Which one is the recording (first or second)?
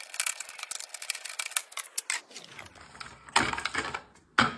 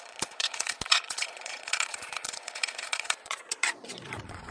first